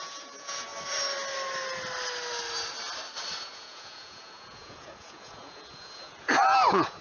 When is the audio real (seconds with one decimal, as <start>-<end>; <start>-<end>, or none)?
0.7-3.4